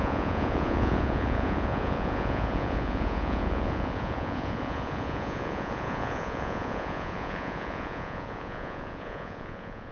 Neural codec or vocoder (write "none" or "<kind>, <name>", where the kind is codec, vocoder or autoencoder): vocoder, Vocos